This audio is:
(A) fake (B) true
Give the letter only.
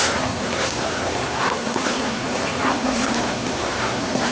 A